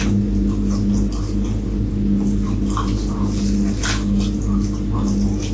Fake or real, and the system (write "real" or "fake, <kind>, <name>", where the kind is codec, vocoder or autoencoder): real